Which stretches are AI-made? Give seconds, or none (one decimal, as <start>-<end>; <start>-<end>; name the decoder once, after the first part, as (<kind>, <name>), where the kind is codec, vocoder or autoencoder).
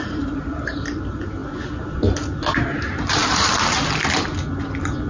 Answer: 0.0-1.4 (vocoder, BigVGAN v2); 2.8-3.2